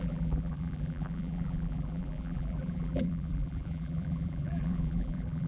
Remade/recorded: remade